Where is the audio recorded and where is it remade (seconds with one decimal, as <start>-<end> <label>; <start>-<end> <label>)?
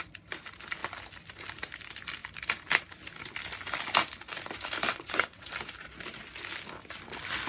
0.0-4.9 recorded; 4.9-5.5 remade; 5.5-7.5 recorded